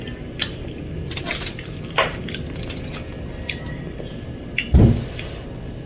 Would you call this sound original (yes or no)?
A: yes